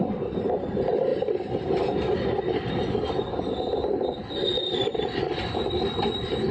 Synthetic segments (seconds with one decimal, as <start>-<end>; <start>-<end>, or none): 0.0-1.1; 5.0-6.5